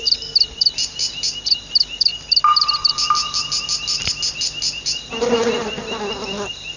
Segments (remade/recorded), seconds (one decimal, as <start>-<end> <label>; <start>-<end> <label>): 0.0-6.8 recorded